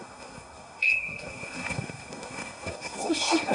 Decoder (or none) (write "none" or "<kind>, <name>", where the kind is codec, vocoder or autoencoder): codec, SNAC